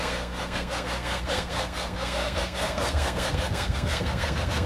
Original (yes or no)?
no